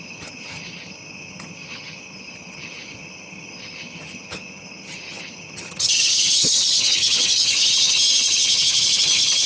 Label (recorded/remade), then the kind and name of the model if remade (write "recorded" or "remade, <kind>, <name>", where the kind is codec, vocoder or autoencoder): remade, vocoder, HiFi-GAN